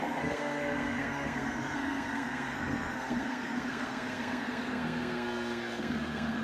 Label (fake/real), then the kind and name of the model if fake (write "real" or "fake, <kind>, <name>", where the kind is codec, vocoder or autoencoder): fake, codec, SNAC